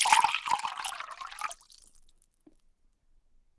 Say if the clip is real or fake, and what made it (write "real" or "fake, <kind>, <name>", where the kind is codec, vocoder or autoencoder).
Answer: real